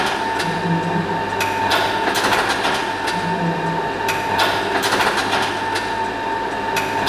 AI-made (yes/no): no